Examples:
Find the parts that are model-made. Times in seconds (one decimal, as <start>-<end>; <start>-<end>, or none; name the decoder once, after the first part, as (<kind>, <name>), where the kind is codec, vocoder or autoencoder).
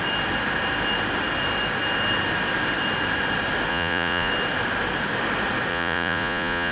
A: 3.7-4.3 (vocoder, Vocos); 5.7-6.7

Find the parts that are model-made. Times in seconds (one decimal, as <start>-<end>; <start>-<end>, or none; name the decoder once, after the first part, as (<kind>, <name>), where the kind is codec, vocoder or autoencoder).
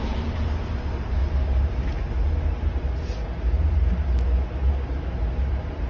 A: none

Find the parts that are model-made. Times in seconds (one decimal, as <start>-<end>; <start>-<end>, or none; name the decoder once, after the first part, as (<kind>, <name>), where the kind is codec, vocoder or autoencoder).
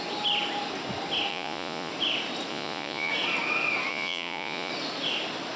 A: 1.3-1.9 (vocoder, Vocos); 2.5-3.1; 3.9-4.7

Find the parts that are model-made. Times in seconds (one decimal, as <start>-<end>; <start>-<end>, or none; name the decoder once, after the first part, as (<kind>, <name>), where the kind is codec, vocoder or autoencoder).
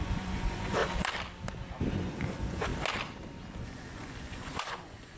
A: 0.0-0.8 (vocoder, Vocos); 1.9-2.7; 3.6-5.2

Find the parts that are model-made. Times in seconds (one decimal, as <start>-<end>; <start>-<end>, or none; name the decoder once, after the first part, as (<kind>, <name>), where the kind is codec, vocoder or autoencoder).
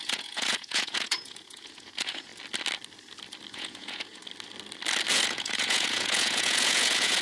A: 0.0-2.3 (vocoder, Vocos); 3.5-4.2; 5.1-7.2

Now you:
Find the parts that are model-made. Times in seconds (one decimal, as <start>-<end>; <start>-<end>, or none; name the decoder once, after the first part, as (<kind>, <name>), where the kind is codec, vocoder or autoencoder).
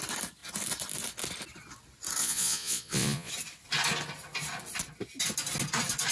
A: 2.2-3.3 (vocoder, Vocos)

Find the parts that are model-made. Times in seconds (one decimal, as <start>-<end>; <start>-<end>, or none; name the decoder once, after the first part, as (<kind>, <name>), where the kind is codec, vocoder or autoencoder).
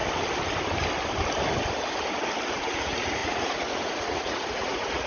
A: 2.5-5.1 (vocoder, Vocos)